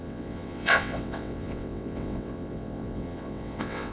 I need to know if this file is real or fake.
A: fake